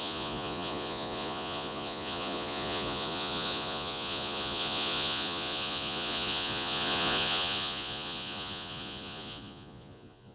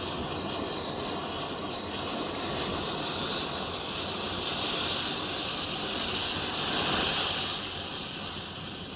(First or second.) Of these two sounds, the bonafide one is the second